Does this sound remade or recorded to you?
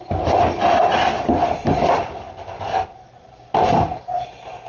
recorded